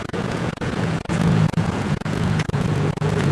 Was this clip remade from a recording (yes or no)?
yes